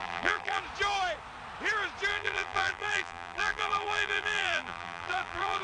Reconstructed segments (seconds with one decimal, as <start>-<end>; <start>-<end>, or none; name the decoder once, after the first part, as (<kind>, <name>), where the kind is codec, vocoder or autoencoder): 0.0-0.6 (vocoder, BigVGAN v2); 2.1-5.6